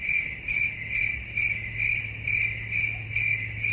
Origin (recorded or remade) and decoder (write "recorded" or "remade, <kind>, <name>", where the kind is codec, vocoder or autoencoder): recorded